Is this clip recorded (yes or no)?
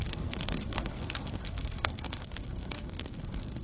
no